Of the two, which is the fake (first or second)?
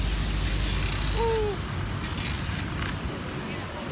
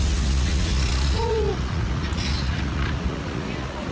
second